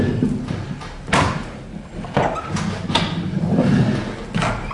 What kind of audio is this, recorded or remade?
recorded